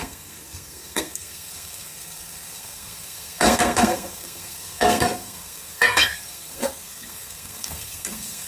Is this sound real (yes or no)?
no